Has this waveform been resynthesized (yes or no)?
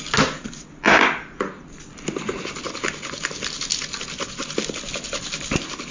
no